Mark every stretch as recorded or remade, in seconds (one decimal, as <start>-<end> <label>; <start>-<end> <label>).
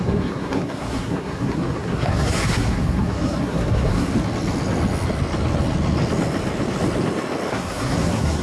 0.0-4.1 remade; 4.1-7.5 recorded; 7.5-8.4 remade